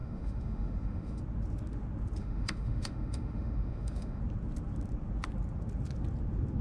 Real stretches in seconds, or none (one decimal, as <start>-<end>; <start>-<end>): 1.2-2.2; 4.2-6.6